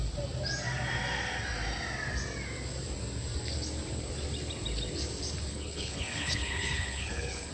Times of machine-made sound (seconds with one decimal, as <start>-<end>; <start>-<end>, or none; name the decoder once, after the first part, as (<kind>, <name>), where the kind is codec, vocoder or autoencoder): 5.5-7.5 (codec, HILCodec)